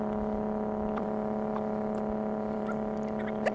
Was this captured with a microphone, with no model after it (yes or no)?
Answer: no